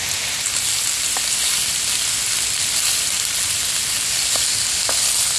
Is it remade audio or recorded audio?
recorded